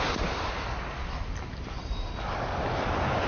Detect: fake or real real